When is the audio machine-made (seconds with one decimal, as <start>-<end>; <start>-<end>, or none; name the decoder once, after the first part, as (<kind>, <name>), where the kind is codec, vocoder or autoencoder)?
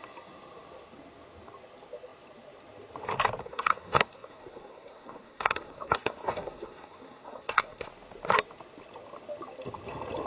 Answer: 3.4-7.9 (codec, SNAC)